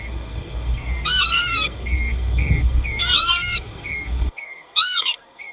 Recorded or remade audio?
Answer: remade